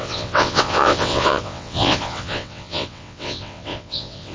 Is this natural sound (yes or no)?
no